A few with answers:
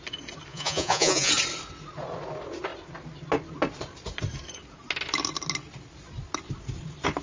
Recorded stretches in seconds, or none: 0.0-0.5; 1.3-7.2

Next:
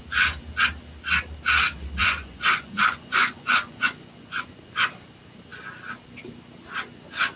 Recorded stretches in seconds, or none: 0.0-2.0; 4.9-7.4

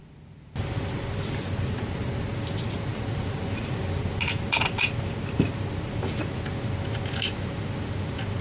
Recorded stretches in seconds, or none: 0.0-8.4

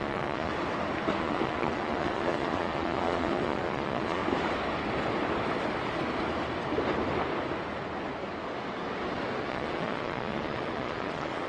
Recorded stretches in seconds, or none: 0.5-1.2; 4.2-9.4

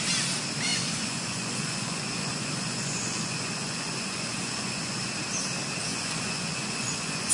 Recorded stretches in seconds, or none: 0.0-0.7; 5.1-5.9

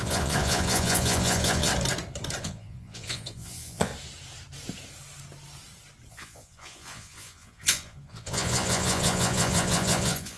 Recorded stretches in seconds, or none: 1.7-2.4; 3.9-6.1